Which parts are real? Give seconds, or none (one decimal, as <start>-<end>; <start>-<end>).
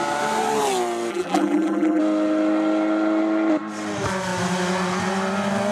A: 0.0-1.1; 2.0-5.7